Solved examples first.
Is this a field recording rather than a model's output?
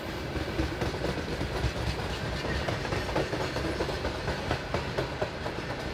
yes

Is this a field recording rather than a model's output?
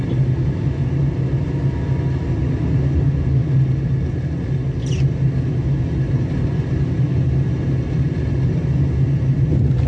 yes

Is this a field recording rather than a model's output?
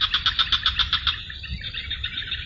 yes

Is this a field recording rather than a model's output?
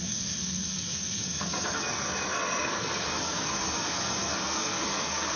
no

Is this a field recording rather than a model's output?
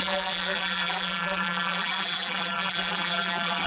no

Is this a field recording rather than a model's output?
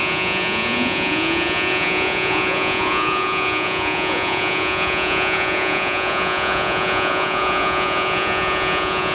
no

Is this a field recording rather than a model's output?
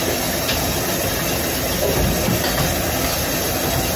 yes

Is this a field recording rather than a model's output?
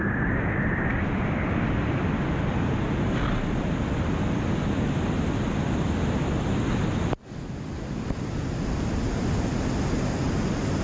yes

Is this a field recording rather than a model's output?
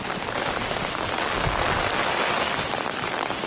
yes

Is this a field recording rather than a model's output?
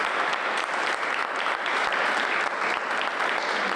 yes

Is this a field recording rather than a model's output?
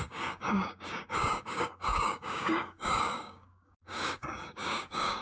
no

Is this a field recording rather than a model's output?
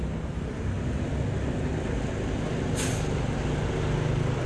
yes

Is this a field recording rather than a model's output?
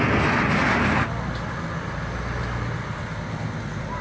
yes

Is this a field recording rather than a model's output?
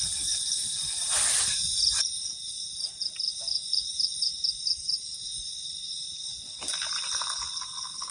no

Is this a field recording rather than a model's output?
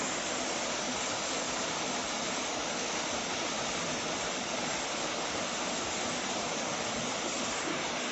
yes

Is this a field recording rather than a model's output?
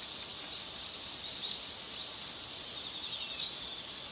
yes